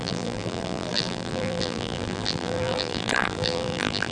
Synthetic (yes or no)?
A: yes